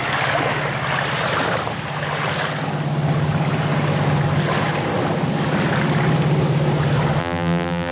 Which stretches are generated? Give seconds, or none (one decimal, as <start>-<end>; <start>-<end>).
7.2-7.9